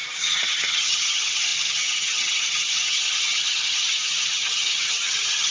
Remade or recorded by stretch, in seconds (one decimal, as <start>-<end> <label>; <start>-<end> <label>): 0.0-5.5 remade